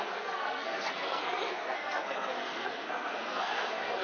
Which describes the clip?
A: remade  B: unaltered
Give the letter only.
A